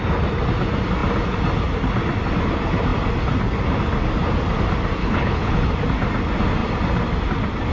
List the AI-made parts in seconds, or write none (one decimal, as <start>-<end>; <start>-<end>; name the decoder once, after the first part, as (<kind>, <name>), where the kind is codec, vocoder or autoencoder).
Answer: 5.0-5.6 (codec, HILCodec)